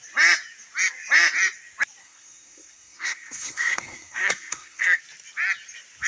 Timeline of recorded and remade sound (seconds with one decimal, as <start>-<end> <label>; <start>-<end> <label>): 0.0-2.0 recorded; 2.0-5.0 remade; 5.0-6.1 recorded